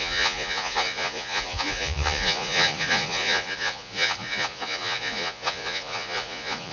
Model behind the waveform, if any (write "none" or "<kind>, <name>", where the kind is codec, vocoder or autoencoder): vocoder, Vocos